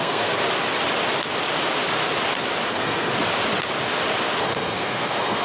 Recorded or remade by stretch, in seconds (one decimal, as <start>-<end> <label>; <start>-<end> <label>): 0.0-0.4 remade; 0.4-2.7 recorded; 2.7-3.1 remade; 3.1-4.4 recorded; 4.4-5.4 remade